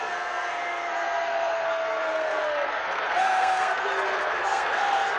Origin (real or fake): fake